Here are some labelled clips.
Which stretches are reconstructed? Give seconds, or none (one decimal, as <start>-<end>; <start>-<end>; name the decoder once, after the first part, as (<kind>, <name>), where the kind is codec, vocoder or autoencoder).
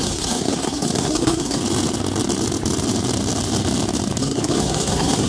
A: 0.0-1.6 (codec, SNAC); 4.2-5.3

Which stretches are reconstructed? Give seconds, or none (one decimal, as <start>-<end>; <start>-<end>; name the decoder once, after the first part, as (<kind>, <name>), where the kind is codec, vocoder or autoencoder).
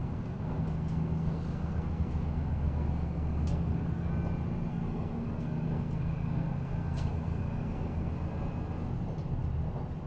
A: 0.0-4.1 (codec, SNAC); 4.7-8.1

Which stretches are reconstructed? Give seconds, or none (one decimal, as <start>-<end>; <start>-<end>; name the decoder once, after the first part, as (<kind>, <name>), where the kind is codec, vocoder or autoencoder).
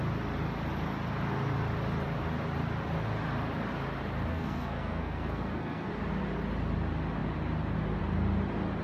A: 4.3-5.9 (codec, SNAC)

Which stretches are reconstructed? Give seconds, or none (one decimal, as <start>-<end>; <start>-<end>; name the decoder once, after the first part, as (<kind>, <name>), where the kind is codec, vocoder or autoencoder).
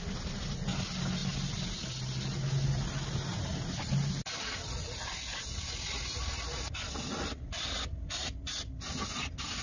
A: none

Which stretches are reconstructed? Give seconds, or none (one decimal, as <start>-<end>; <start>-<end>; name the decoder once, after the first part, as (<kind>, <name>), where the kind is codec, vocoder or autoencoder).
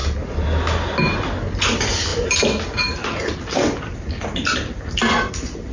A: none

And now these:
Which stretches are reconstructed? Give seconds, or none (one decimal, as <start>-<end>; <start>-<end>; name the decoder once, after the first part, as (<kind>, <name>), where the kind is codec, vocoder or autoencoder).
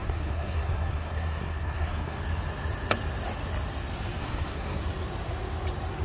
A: 0.0-2.2 (codec, SNAC); 4.2-4.8